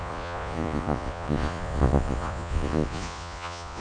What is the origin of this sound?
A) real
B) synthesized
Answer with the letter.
B